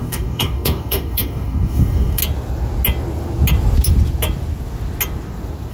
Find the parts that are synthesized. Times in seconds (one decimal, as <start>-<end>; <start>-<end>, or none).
0.0-2.2